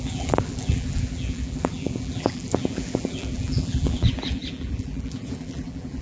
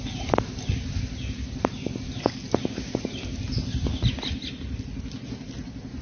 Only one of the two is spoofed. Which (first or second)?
first